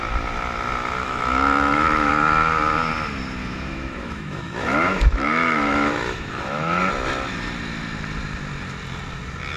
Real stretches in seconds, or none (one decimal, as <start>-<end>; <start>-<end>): 0.0-1.0; 2.1-3.4; 6.9-9.6